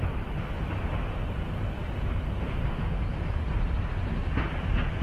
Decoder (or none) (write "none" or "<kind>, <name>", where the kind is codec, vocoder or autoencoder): none